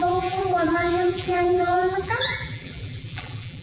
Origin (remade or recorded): remade